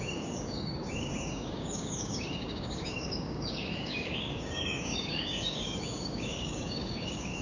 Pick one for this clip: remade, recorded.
remade